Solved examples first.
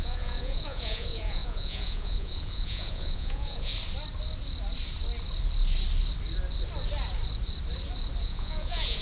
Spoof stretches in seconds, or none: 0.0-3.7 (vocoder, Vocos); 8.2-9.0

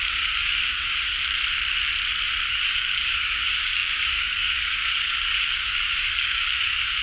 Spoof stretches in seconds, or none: 0.0-1.2 (codec, DAC); 2.5-7.0

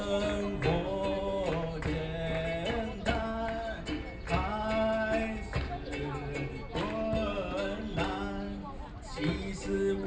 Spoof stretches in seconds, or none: none

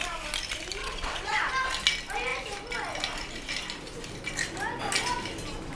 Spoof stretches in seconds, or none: 0.8-1.5 (vocoder, WaveNeXt)

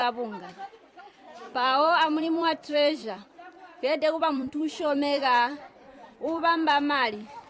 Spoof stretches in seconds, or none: 1.0-7.5 (vocoder, BigVGAN v2)

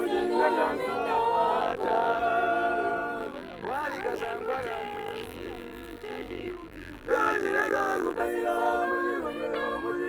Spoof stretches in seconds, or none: 1.6-2.2 (vocoder, BigVGAN v2); 3.2-8.2

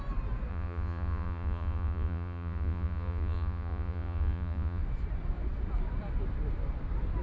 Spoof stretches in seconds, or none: 0.5-4.8 (vocoder, Vocos)

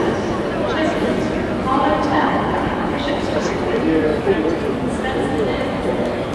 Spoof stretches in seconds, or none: 2.1-3.5 (codec, HILCodec)